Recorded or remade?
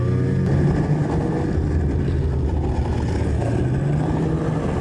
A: recorded